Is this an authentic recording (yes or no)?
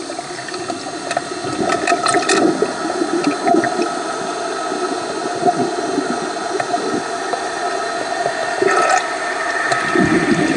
yes